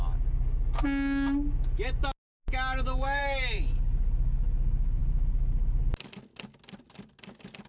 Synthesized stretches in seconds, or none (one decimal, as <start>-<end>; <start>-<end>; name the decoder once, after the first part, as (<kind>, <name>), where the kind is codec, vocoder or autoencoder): none